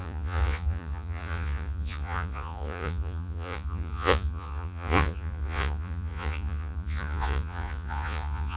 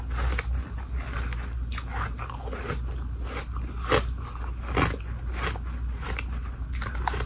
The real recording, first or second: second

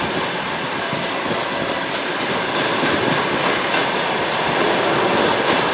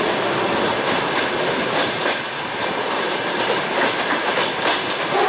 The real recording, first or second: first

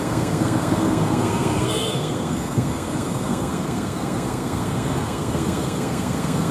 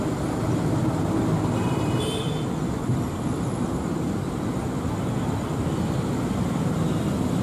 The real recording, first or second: second